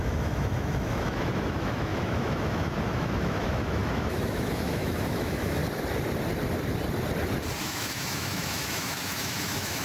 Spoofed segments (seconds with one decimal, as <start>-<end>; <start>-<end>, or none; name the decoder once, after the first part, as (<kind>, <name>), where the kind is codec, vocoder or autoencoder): 0.0-5.6 (autoencoder, DAC-VAE); 7.6-9.8